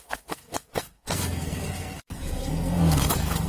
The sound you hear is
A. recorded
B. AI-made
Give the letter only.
B